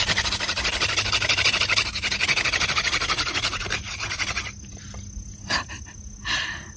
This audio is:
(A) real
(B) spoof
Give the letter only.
A